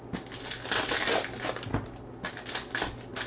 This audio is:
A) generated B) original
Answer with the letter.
B